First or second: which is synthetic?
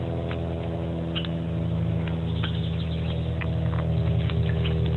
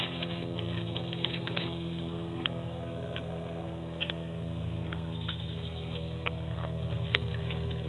second